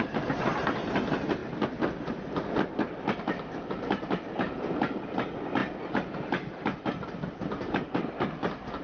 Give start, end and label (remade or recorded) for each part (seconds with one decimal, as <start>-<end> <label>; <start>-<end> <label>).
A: 0.0-8.8 recorded